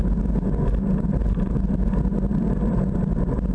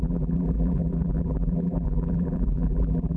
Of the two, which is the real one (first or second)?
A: first